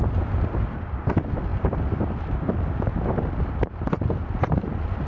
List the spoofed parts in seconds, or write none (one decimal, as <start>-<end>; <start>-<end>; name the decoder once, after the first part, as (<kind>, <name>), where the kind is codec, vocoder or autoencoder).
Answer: 1.5-4.6 (vocoder, BigVGAN v2)